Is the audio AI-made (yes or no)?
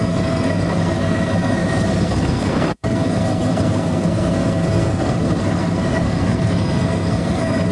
yes